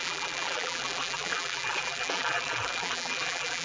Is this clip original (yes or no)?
no